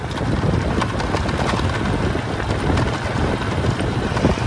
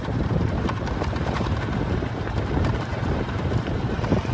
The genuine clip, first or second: first